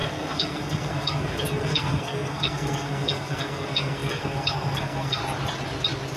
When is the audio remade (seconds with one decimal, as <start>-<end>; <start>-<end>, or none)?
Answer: 0.0-5.2

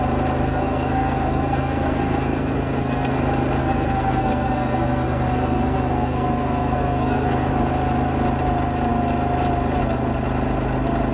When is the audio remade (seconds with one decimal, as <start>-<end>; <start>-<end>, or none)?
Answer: 0.5-3.2; 3.6-7.5

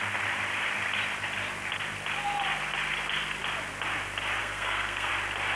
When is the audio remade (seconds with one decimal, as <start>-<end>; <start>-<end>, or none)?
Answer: 4.4-5.1

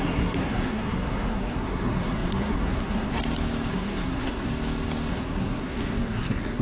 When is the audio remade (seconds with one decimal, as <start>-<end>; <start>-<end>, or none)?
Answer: 0.0-3.2; 3.7-4.5; 5.1-6.6

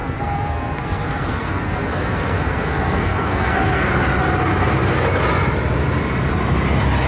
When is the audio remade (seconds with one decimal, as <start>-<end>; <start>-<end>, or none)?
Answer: 0.0-3.9

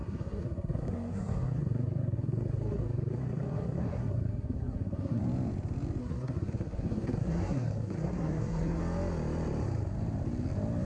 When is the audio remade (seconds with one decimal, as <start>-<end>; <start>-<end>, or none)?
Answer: 0.0-5.2; 6.0-8.8

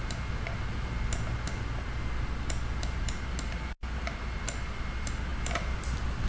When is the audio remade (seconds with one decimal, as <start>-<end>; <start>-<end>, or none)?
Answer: none